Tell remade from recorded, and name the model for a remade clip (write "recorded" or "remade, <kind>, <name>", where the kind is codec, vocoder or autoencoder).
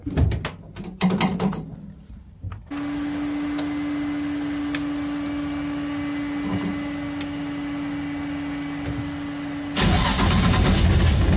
recorded